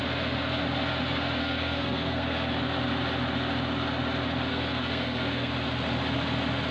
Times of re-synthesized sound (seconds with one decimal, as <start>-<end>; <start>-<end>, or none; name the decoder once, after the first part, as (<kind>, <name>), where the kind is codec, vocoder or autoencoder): 1.4-2.5 (codec, SNAC); 4.5-5.5